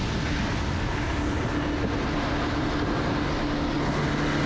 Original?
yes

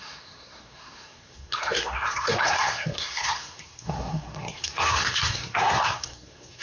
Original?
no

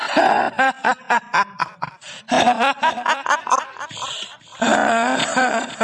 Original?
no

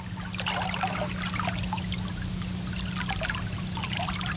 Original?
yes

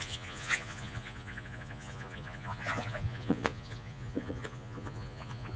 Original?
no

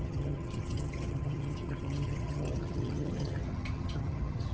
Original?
no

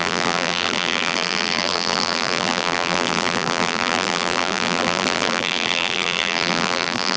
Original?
no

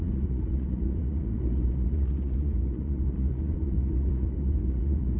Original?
no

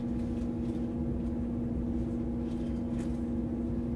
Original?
yes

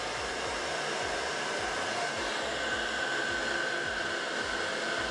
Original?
yes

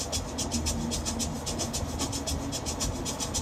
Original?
yes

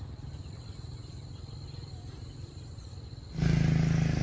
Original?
yes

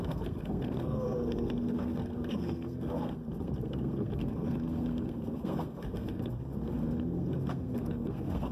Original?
no